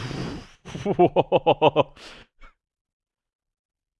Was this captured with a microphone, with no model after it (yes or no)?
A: no